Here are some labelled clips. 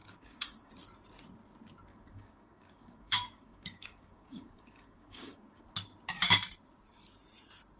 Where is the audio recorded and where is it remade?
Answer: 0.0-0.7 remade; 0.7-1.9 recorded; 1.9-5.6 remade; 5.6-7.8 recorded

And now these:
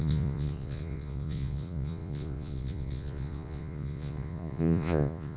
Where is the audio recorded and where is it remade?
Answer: 0.0-5.4 remade

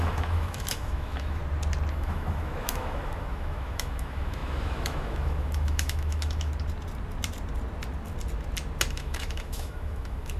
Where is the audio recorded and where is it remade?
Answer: 0.0-1.4 remade; 1.4-1.9 recorded; 1.9-6.5 remade; 6.5-8.9 recorded; 8.9-10.4 remade

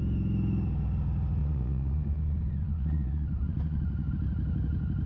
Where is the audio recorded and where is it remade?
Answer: 0.0-1.4 recorded; 1.4-4.1 remade; 4.1-5.1 recorded

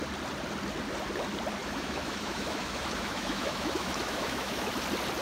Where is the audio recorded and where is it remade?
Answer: 0.0-1.6 recorded; 1.6-4.7 remade; 4.7-5.2 recorded

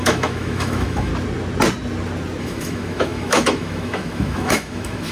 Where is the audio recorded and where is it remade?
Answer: 0.0-1.1 remade; 1.1-2.4 recorded; 2.4-5.1 remade

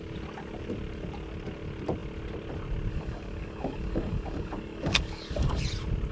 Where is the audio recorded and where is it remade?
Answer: 0.0-2.9 recorded; 2.9-5.6 remade; 5.6-6.1 recorded

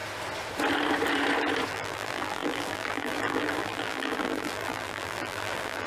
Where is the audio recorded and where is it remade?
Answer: 0.0-1.7 recorded; 1.7-5.9 remade